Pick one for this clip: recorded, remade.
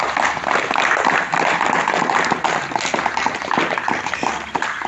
recorded